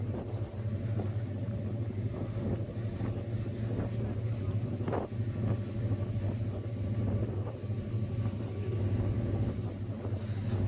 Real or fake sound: real